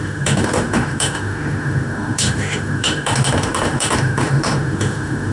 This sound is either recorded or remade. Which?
remade